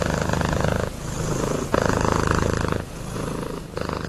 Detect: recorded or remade recorded